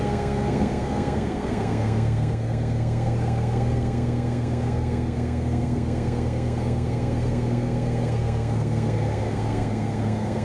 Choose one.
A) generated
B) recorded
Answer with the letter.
A